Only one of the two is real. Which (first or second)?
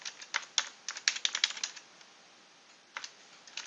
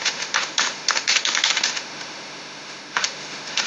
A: first